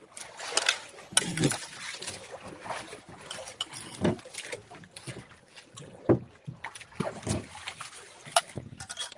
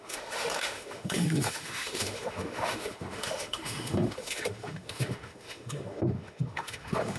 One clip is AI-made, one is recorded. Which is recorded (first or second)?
first